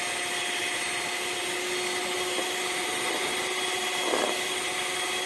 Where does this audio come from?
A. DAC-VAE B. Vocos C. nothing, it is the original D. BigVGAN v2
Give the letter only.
C